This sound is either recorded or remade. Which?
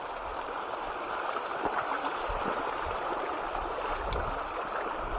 recorded